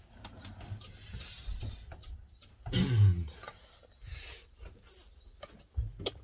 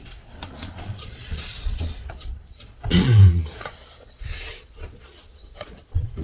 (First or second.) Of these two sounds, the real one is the first